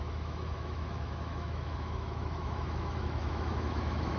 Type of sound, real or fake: fake